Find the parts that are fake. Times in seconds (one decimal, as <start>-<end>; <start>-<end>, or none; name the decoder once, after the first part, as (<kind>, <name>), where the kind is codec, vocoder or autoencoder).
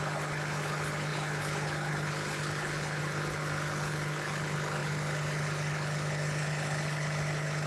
0.0-7.7 (codec, HILCodec)